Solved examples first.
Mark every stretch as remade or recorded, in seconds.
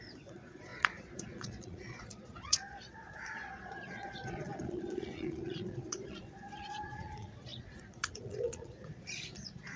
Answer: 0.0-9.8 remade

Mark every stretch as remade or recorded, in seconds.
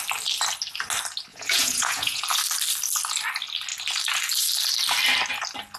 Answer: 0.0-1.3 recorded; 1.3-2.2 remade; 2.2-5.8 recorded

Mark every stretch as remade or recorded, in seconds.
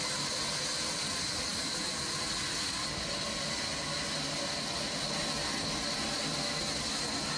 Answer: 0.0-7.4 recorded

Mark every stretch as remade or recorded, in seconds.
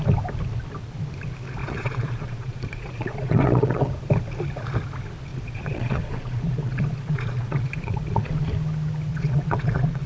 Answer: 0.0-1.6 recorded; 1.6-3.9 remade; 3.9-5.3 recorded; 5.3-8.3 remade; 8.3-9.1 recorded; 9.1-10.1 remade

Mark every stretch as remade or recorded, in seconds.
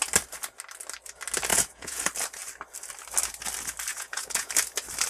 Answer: 0.0-1.5 recorded; 1.5-2.0 remade; 2.0-3.9 recorded; 3.9-4.5 remade; 4.5-5.1 recorded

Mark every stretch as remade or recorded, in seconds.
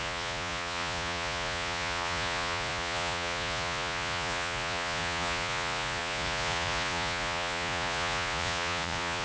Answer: 0.0-9.2 remade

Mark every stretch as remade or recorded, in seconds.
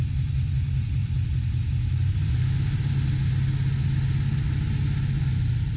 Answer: 0.0-5.8 recorded